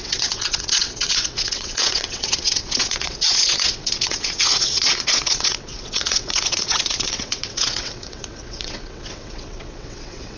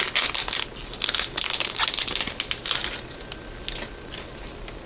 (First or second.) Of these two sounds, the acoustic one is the second